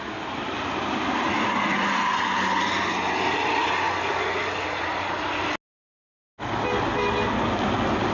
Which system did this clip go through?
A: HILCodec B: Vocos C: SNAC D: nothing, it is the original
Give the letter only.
D